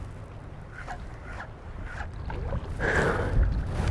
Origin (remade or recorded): recorded